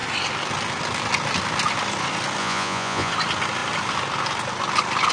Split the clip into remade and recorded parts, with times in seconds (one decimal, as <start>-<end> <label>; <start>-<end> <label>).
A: 0.0-2.4 recorded; 2.4-3.1 remade; 3.1-5.1 recorded